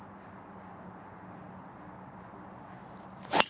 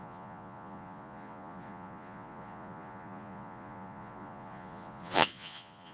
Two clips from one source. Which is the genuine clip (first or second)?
first